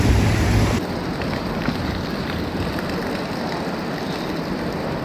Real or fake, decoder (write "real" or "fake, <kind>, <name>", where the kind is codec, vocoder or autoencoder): real